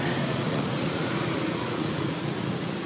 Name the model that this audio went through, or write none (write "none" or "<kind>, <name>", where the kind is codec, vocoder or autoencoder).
vocoder, Vocos